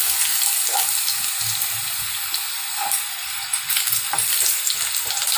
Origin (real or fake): fake